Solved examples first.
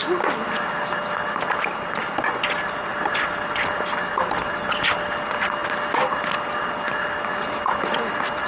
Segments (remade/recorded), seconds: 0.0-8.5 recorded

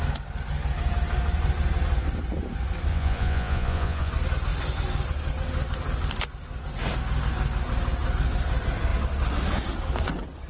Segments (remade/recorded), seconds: 0.0-2.9 recorded; 2.9-4.1 remade; 4.1-10.5 recorded

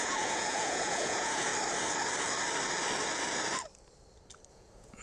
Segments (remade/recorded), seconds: 0.0-1.5 remade; 1.5-4.5 recorded; 4.5-5.0 remade

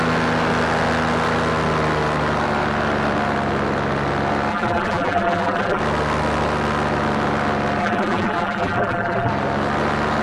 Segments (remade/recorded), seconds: 0.0-4.5 recorded; 4.5-5.8 remade; 5.8-7.8 recorded; 7.8-9.3 remade; 9.3-10.2 recorded

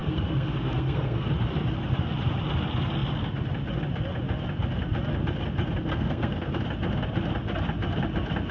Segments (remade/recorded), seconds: 0.0-1.3 remade; 1.3-5.9 recorded; 5.9-6.6 remade; 6.6-8.5 recorded